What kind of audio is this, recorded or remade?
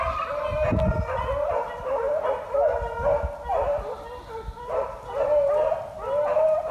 recorded